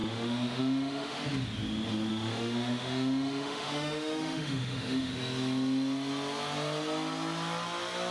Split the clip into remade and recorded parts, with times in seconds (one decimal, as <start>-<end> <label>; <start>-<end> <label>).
0.0-1.2 remade; 1.2-2.1 recorded; 2.1-5.1 remade; 5.1-8.1 recorded